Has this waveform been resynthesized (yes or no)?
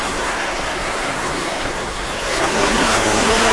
yes